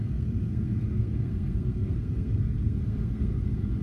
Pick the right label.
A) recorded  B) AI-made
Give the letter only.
B